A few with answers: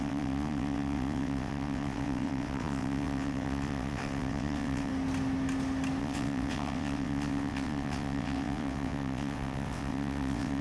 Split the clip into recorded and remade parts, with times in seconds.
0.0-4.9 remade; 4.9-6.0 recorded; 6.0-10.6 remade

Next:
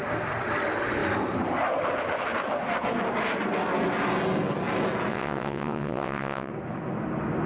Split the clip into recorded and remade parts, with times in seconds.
0.0-5.1 recorded; 5.1-6.5 remade; 6.5-7.5 recorded

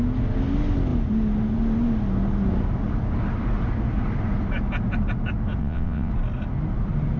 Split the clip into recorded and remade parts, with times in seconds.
0.0-5.6 recorded; 5.6-6.1 remade; 6.1-7.2 recorded

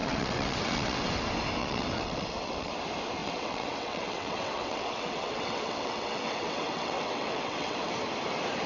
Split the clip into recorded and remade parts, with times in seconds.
0.0-1.1 remade; 1.1-1.6 recorded; 1.6-2.7 remade; 2.7-3.2 recorded; 3.2-7.9 remade; 7.9-8.7 recorded

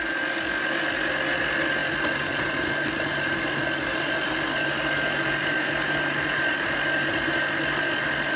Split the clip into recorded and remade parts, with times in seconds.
0.0-8.4 recorded

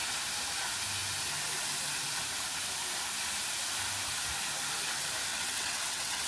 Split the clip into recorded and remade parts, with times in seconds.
0.0-5.3 recorded; 5.3-6.3 remade

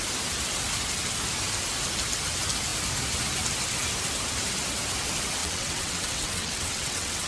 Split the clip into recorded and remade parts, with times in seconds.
0.0-5.4 recorded; 5.4-7.3 remade

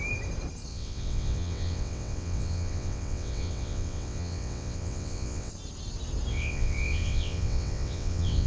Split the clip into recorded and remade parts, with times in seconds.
0.0-0.7 recorded; 0.7-5.5 remade; 5.5-6.3 recorded; 6.3-8.5 remade